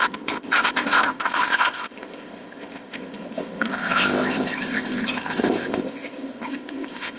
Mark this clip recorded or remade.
remade